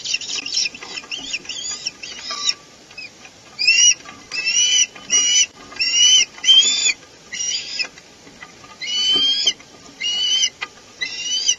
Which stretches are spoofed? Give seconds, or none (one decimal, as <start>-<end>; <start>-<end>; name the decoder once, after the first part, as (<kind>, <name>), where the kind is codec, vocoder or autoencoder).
0.0-4.8 (vocoder, BigVGAN v2); 5.4-8.0; 9.6-11.6